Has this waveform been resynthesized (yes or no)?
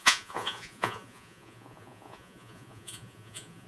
yes